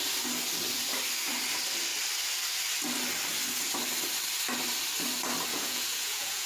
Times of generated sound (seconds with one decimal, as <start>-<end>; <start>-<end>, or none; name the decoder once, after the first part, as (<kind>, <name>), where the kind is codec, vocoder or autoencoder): 5.5-6.5 (vocoder, Vocos)